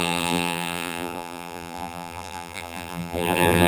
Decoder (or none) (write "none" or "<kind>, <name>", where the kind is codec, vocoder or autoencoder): vocoder, BigVGAN v2